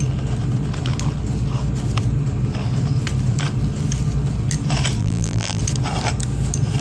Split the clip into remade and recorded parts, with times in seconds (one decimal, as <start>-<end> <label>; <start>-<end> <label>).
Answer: 0.0-5.0 recorded; 5.0-5.6 remade; 5.6-6.8 recorded